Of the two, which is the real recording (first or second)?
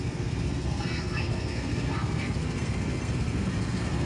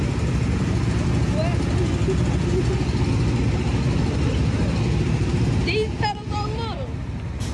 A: second